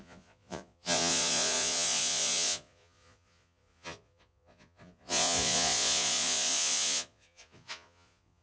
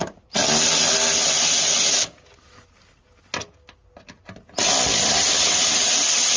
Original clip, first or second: second